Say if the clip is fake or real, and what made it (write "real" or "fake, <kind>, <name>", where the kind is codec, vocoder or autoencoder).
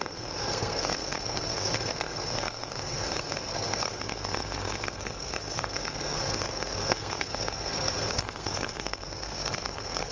fake, codec, SNAC